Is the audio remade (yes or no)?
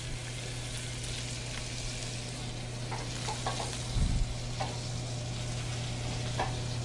no